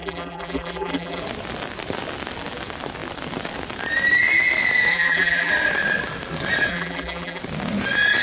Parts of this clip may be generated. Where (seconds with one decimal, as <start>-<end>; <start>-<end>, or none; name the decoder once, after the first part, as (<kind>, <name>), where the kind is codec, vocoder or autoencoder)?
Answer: 0.0-1.2 (vocoder, BigVGAN v2); 4.9-5.5; 6.7-7.4